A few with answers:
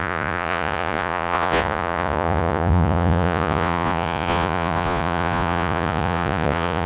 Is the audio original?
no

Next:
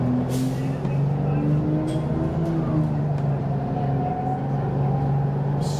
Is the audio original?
yes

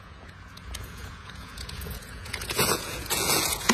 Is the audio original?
no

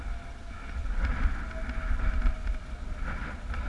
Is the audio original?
yes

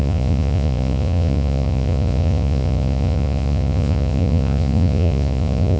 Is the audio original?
no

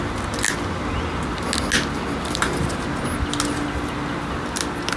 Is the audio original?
yes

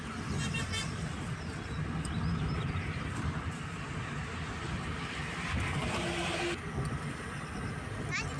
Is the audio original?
yes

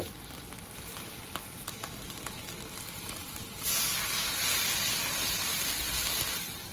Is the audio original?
yes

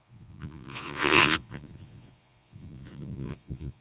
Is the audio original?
no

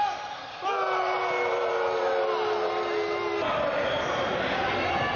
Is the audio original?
yes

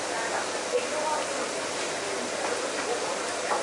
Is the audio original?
yes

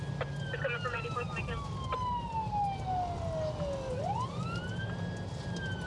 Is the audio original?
yes